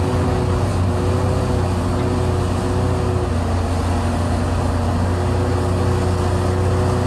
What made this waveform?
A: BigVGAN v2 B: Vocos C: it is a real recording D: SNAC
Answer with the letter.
C